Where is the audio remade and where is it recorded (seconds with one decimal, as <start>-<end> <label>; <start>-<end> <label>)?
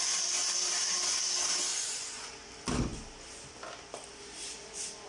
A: 0.0-1.7 recorded; 1.7-2.3 remade; 2.3-5.1 recorded